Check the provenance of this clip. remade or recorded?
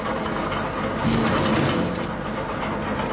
recorded